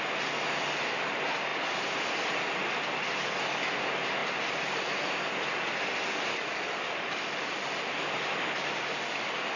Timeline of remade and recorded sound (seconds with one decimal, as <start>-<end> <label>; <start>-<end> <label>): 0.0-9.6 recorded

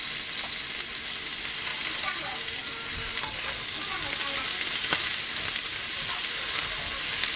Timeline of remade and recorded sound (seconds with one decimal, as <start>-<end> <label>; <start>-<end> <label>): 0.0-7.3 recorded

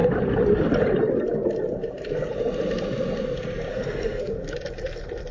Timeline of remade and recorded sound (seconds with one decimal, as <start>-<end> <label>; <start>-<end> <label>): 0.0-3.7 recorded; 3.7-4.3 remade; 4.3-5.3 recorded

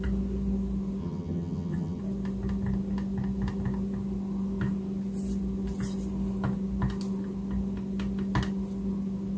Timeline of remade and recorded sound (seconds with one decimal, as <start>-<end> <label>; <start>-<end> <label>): 0.0-1.0 recorded; 1.0-2.0 remade; 2.0-9.4 recorded

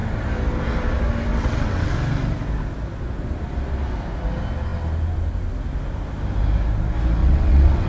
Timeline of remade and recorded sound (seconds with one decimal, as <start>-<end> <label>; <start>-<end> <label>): 0.0-1.3 recorded; 1.3-1.9 remade; 1.9-7.2 recorded; 7.2-7.9 remade